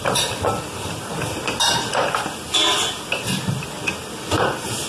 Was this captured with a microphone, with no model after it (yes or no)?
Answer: yes